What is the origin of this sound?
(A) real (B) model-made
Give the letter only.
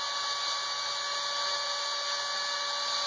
A